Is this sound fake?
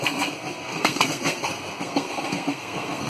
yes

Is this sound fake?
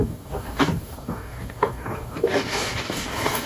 yes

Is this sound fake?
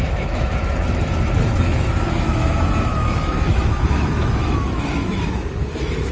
yes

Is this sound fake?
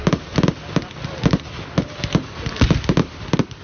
no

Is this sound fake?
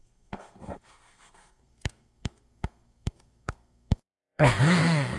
yes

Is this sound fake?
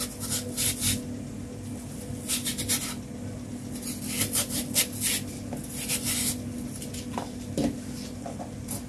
no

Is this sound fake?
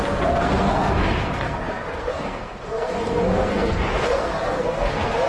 yes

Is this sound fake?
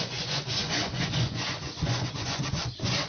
yes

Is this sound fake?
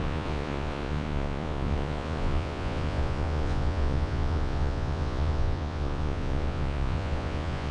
yes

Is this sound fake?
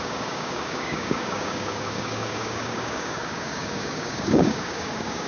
yes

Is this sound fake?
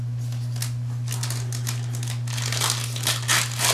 no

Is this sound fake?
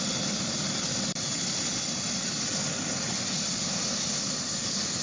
no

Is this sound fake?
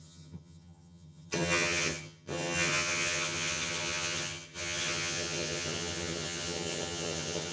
yes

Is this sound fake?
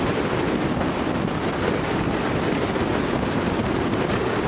no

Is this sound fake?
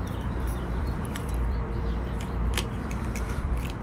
yes